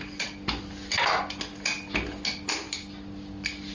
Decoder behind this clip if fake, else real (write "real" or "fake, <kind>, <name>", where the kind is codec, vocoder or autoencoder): real